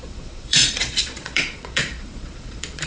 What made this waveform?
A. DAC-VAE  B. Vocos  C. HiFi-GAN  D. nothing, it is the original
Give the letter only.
B